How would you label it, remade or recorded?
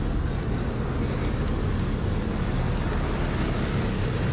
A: recorded